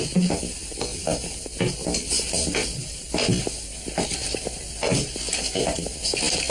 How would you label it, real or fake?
real